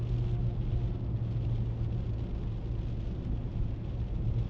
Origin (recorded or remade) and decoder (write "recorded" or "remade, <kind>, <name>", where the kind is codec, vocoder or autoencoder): recorded